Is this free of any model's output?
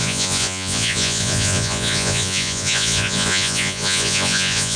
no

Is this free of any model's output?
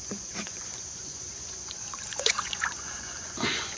no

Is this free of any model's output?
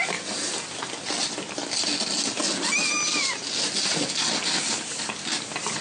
yes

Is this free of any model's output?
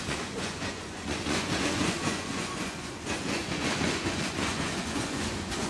no